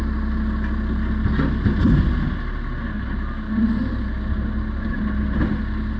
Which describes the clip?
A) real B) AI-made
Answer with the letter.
A